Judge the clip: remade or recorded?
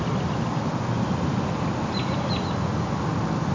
recorded